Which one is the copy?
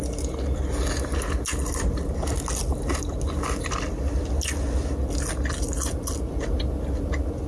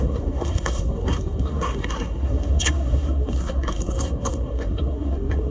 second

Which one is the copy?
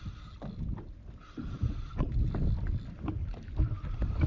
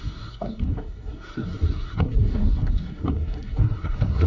second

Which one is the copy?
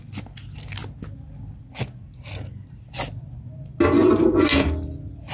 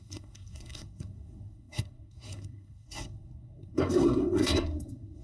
second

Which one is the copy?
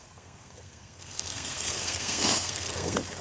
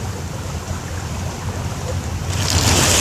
first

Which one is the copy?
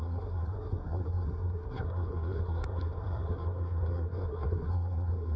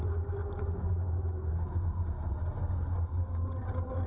first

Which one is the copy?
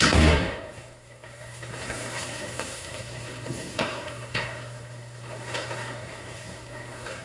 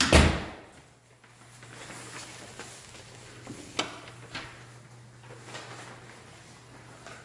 first